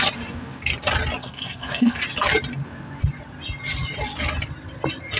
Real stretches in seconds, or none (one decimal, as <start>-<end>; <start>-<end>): 0.0-1.2; 2.0-5.2